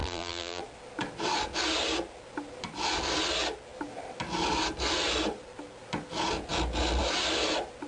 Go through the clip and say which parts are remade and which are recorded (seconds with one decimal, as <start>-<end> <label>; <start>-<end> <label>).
0.0-0.6 remade; 0.6-7.9 recorded